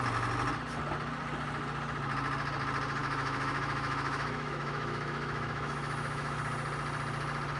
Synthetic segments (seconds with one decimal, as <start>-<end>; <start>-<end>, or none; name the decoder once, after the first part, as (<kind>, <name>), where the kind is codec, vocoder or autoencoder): 3.0-6.4 (autoencoder, DAC-VAE)